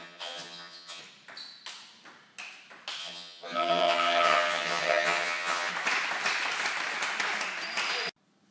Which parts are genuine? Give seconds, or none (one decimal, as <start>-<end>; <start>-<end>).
1.0-3.0; 5.7-8.5